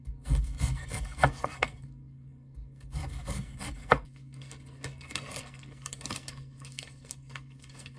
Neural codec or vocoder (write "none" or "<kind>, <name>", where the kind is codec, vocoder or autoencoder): codec, SNAC